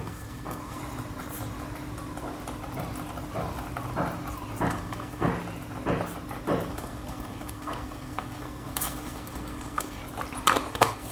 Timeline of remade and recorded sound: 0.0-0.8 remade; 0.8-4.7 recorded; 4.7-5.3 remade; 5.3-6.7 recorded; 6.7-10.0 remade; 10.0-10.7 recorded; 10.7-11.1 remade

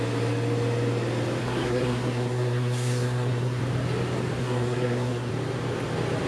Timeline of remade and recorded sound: 0.0-1.4 recorded; 1.4-3.6 remade; 3.6-4.4 recorded; 4.4-5.3 remade; 5.3-6.3 recorded

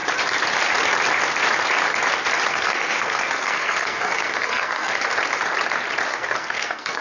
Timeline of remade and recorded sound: 0.0-2.5 recorded; 2.5-4.9 remade; 4.9-6.1 recorded; 6.1-7.0 remade

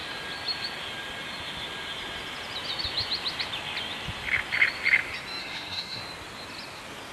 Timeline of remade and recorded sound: 0.0-5.4 recorded; 5.4-6.0 remade; 6.0-7.1 recorded

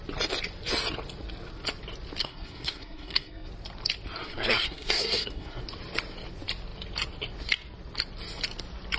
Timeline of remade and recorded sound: 0.0-2.2 recorded; 2.2-3.5 remade; 3.5-4.2 recorded; 4.2-5.6 remade; 5.6-9.0 recorded

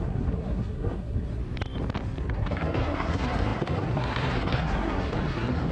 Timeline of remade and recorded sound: 0.0-1.4 remade; 1.4-2.2 recorded; 2.2-5.7 remade